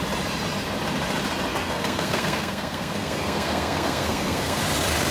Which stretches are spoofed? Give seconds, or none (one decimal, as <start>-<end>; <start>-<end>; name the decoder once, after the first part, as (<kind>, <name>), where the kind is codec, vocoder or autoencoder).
1.5-4.6 (codec, SNAC)